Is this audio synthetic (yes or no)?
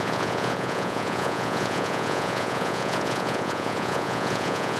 yes